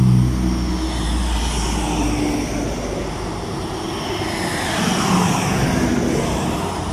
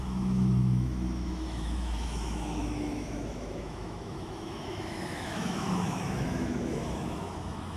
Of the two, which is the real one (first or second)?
first